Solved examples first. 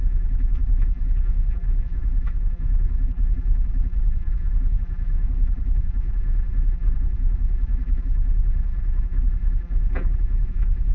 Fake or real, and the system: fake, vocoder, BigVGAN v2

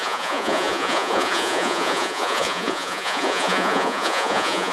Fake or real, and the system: fake, vocoder, Vocos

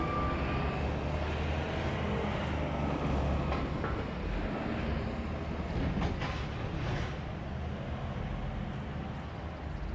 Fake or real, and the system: real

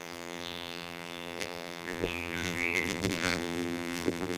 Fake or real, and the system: fake, vocoder, BigVGAN v2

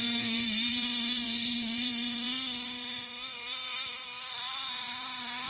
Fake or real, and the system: fake, vocoder, BigVGAN v2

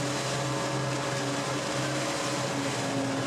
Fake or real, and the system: real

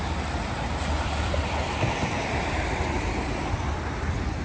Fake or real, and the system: fake, vocoder, BigVGAN v2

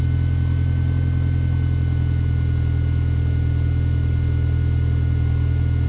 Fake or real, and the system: real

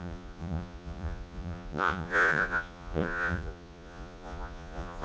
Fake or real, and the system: fake, vocoder, Vocos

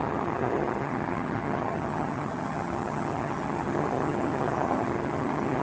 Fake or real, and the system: fake, vocoder, HiFi-GAN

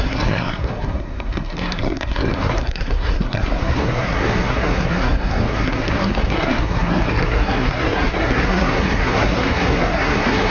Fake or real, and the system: fake, codec, SNAC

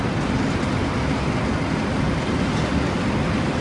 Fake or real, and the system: real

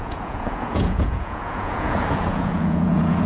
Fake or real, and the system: fake, vocoder, Vocos